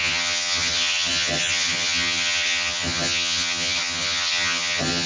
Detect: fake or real fake